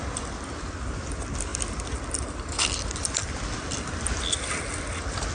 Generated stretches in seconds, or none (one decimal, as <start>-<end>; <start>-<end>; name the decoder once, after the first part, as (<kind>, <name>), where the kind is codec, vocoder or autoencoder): none